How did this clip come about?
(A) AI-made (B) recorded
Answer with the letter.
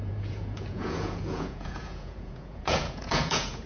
A